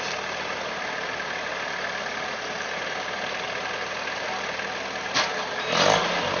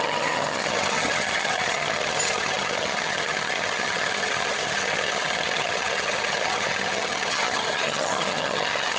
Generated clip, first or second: second